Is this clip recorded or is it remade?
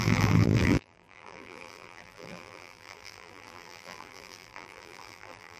remade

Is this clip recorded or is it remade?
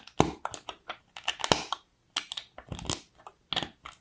recorded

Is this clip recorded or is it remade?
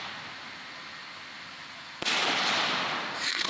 recorded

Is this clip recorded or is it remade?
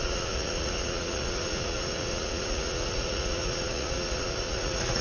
remade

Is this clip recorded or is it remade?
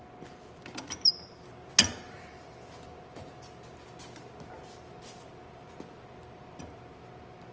recorded